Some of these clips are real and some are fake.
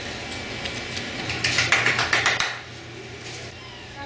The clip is real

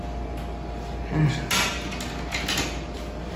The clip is real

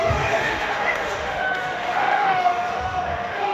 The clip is fake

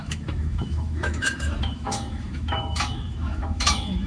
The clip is fake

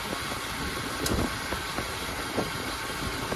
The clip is real